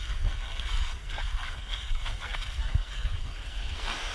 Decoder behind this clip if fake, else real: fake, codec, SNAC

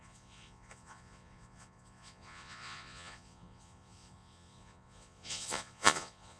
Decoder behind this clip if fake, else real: fake, vocoder, Vocos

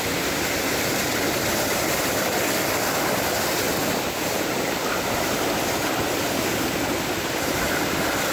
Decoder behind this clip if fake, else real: real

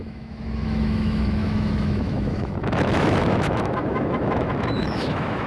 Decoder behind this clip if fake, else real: fake, autoencoder, DAC-VAE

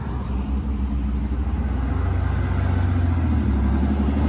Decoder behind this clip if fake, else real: real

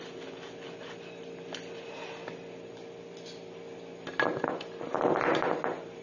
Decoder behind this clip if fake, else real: real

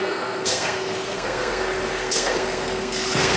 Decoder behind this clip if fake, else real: fake, codec, SNAC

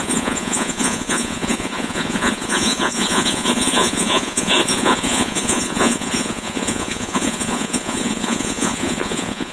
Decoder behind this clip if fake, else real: fake, vocoder, Vocos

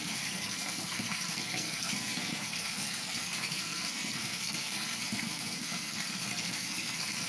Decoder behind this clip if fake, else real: fake, codec, SNAC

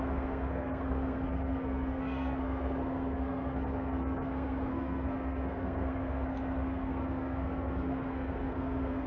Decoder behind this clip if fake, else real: fake, codec, SNAC